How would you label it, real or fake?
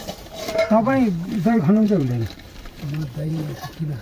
fake